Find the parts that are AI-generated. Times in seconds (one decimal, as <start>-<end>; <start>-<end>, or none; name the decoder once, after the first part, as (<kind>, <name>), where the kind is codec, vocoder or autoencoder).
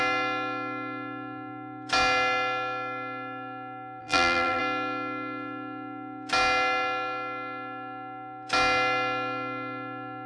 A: 4.0-4.6 (vocoder, BigVGAN v2)